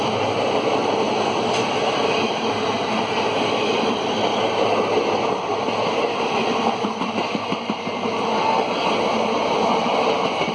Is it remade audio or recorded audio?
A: recorded